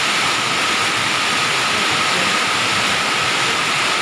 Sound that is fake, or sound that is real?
real